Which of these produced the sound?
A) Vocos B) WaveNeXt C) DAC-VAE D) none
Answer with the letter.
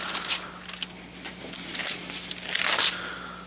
D